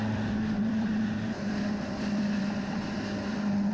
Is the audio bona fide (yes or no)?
no